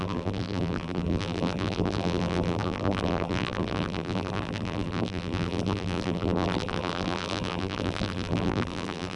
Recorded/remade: remade